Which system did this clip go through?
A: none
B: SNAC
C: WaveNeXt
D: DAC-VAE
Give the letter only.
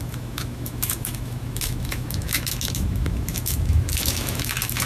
D